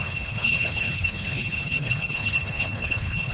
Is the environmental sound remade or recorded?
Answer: remade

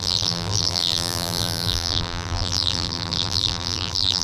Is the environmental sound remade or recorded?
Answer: remade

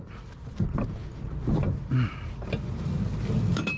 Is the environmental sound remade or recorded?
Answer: recorded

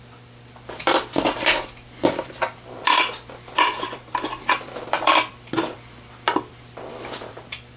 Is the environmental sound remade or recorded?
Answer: remade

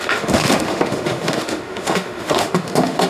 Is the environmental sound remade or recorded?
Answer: remade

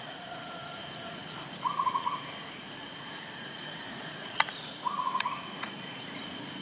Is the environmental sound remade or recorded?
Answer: remade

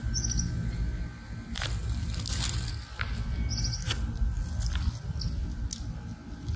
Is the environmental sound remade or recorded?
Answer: recorded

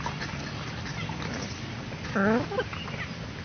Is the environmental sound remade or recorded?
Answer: recorded